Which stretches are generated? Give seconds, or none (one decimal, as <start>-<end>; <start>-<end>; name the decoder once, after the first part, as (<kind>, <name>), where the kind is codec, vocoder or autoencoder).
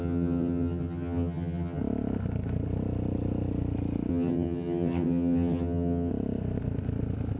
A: 0.0-1.8 (vocoder, HiFi-GAN); 4.1-6.1